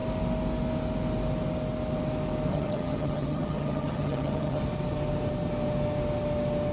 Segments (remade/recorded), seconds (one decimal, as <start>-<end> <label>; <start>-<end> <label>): 0.0-2.5 recorded; 2.5-4.6 remade; 4.6-6.7 recorded